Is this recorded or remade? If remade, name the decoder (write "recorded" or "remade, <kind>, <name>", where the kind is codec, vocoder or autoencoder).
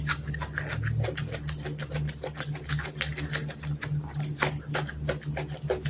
recorded